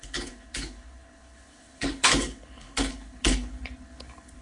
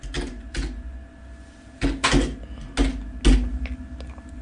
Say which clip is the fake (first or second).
first